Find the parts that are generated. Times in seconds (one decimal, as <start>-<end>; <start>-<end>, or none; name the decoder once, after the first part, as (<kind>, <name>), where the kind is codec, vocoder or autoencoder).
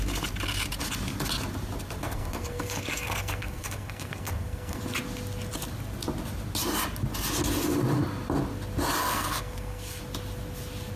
2.0-4.8 (codec, SNAC); 9.0-10.0